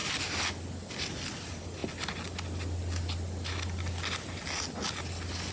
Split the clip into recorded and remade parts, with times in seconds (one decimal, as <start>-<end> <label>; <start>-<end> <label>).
0.0-5.5 recorded